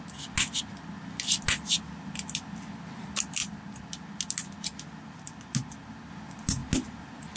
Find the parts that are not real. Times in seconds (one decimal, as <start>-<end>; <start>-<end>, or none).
none